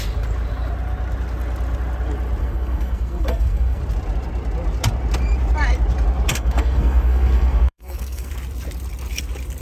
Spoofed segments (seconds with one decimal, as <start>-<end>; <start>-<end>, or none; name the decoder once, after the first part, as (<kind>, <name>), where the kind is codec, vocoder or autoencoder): 2.4-3.8 (codec, SNAC); 6.3-8.3